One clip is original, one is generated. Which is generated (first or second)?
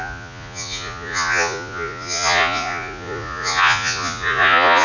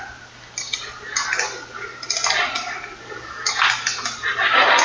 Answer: first